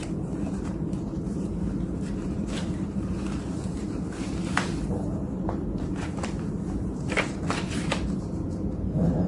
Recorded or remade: remade